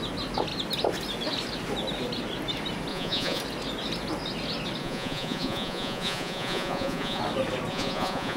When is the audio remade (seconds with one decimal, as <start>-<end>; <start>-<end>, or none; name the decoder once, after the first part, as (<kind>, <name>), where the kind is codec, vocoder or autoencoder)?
2.9-3.4 (vocoder, Vocos); 4.8-7.2; 7.7-8.4